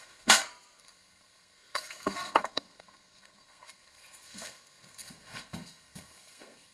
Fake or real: fake